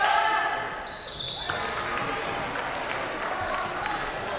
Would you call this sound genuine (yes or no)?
yes